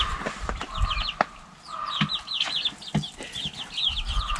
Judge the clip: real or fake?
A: real